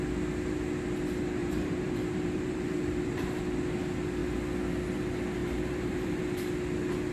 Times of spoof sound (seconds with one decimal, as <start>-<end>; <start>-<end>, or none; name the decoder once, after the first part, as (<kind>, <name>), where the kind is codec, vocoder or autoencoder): 1.4-3.4 (vocoder, BigVGAN v2); 5.4-6.2